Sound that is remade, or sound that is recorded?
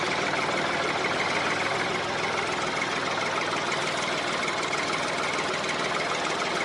recorded